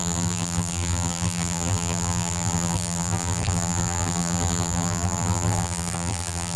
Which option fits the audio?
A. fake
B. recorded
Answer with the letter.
A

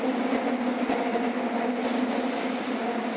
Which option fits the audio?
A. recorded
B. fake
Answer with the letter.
A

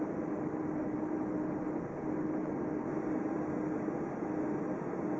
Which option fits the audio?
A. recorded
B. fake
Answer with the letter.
A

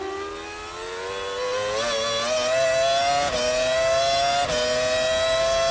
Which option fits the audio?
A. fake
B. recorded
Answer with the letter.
B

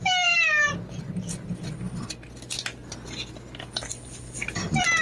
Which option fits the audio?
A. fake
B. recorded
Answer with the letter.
B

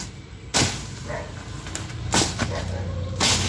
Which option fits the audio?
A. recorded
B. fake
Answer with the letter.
A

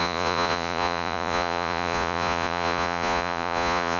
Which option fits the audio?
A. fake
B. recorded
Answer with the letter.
A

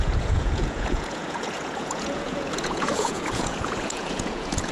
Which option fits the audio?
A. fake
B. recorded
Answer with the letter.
A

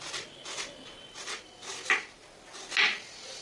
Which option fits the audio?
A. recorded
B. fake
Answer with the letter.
A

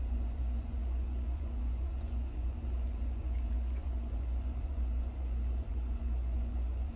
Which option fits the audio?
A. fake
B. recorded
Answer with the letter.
A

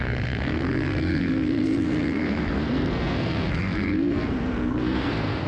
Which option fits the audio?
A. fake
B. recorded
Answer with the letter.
A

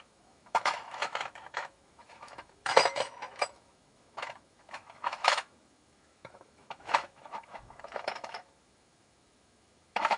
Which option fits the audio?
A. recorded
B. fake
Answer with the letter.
B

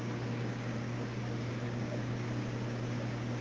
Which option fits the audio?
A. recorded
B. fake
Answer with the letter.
B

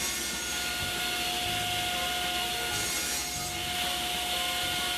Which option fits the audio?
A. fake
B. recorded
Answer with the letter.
B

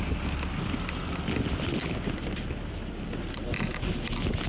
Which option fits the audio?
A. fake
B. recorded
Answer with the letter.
B